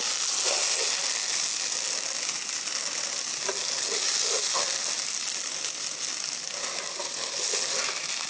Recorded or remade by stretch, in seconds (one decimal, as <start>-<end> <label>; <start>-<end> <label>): 0.0-8.3 recorded